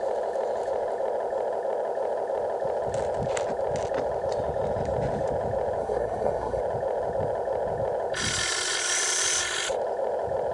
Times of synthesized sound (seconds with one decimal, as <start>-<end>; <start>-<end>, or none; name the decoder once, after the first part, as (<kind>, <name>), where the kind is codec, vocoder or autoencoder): 5.8-6.6 (codec, SNAC)